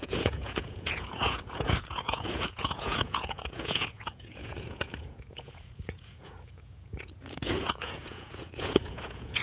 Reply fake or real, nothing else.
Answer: fake